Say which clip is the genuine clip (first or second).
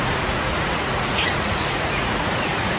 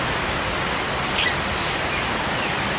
second